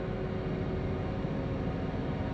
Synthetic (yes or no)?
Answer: no